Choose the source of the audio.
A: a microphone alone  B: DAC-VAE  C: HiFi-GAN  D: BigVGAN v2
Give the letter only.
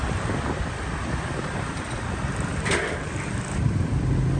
D